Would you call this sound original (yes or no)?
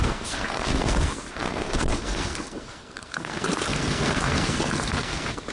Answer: no